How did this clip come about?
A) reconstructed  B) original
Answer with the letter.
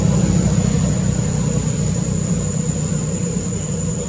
B